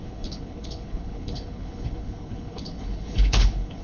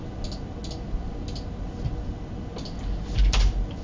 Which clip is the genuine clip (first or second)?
second